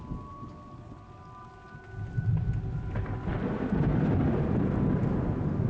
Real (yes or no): yes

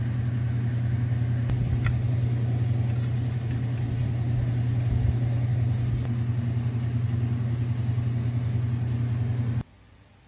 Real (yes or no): yes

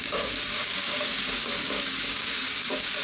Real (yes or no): no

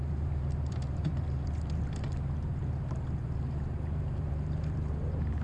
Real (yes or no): no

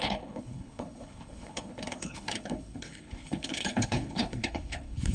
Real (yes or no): no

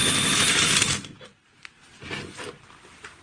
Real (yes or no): yes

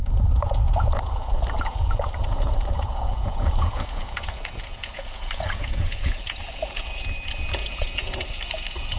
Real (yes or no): no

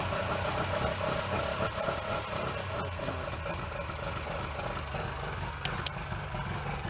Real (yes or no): yes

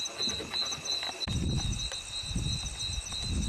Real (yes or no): yes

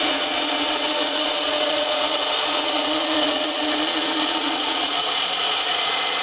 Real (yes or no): no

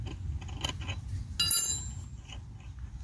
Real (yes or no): yes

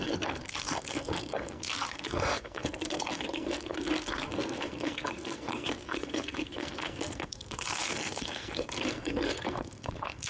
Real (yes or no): no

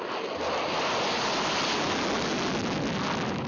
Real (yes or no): yes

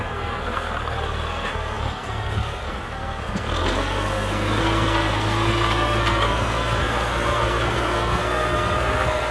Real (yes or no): no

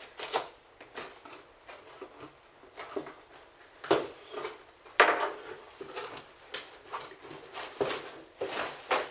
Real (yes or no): yes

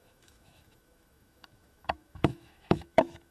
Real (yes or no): no